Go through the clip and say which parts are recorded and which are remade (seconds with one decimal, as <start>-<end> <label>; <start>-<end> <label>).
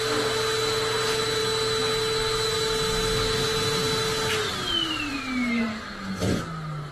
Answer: 0.0-5.7 recorded; 5.7-6.4 remade; 6.4-6.9 recorded